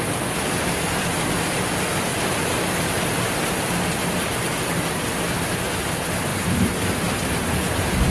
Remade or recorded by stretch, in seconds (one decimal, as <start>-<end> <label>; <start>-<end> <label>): 0.0-4.0 remade; 4.0-4.9 recorded; 4.9-8.1 remade

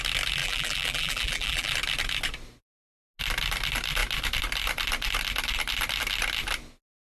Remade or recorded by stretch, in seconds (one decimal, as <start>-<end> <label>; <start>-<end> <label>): 0.0-0.4 recorded; 0.4-1.7 remade; 1.7-7.2 recorded

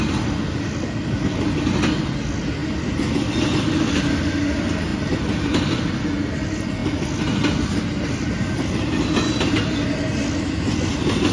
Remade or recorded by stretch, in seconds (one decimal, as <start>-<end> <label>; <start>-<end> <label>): 0.0-11.3 recorded

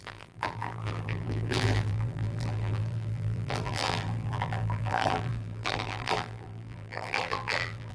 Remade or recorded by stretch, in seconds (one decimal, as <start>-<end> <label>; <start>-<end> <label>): 0.0-7.9 remade

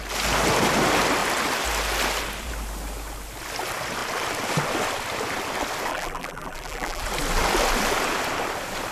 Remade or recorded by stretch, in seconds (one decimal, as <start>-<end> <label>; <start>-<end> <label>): 0.0-5.9 recorded; 5.9-7.0 remade; 7.0-8.9 recorded